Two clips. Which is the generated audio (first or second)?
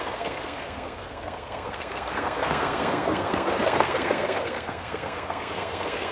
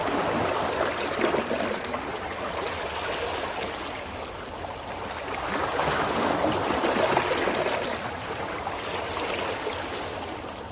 first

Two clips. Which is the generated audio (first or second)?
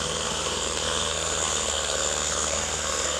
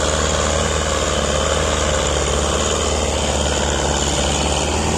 first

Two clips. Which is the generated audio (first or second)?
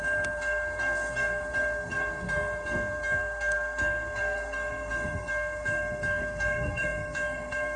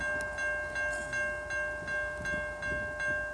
first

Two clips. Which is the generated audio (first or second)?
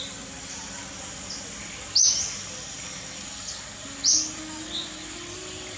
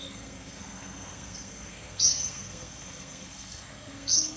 second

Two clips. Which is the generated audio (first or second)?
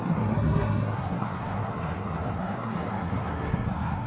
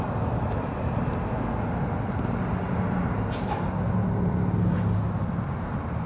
first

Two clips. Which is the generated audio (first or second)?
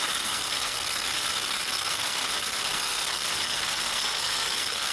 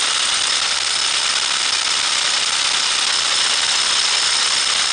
first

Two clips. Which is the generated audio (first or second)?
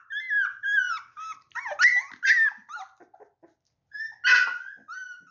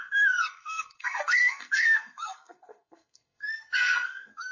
second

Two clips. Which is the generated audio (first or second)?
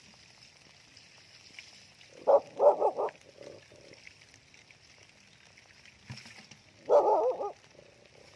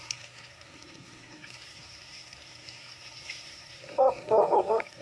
second